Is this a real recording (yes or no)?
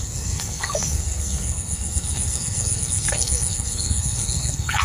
no